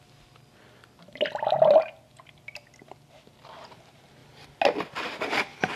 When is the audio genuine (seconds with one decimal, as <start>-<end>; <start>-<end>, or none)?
0.0-5.8